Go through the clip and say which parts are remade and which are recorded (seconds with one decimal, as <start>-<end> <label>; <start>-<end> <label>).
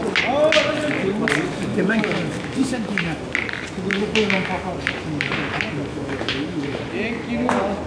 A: 0.0-1.7 recorded; 1.7-3.2 remade; 3.2-3.9 recorded; 3.9-4.7 remade; 4.7-5.9 recorded; 5.9-6.8 remade; 6.8-7.9 recorded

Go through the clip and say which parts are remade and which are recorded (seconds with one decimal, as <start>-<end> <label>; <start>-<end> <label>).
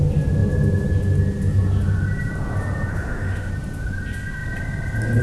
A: 0.0-2.9 recorded; 2.9-3.5 remade; 3.5-5.2 recorded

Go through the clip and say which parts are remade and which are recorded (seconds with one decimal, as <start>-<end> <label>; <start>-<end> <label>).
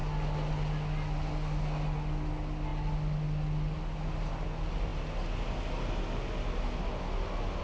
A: 0.0-7.6 recorded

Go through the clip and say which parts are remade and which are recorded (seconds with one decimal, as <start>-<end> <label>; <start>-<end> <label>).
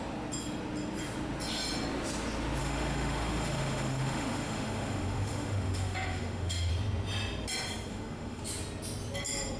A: 0.0-2.6 recorded; 2.6-6.7 remade; 6.7-7.9 recorded; 7.9-8.4 remade; 8.4-9.6 recorded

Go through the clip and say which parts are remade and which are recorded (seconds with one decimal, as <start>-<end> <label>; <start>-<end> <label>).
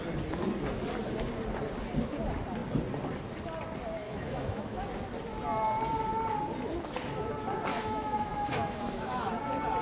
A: 0.0-4.0 recorded; 4.0-4.8 remade; 4.8-7.7 recorded; 7.7-9.3 remade; 9.3-9.8 recorded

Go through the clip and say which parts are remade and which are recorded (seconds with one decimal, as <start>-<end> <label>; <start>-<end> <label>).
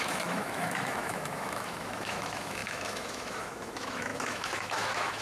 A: 0.0-5.2 remade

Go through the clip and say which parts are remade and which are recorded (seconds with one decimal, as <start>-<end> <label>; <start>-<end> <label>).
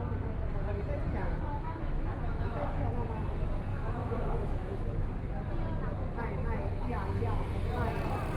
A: 0.0-1.2 recorded; 1.2-2.9 remade; 2.9-3.7 recorded; 3.7-4.8 remade; 4.8-8.4 recorded